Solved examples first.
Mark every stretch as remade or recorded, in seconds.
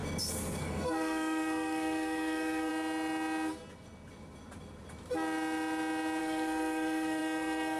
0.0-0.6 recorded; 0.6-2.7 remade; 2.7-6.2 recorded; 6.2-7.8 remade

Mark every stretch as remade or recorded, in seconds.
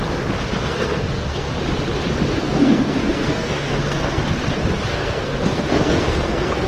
0.0-0.5 recorded; 0.5-1.5 remade; 1.5-2.3 recorded; 2.3-4.2 remade; 4.2-4.9 recorded; 4.9-6.7 remade